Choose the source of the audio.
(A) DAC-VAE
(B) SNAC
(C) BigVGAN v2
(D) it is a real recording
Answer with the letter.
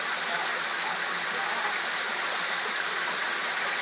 D